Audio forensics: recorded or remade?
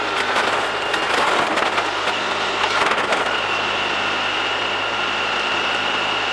recorded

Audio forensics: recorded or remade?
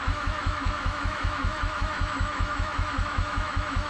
remade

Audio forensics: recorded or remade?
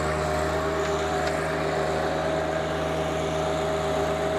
recorded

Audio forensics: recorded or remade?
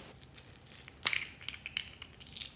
recorded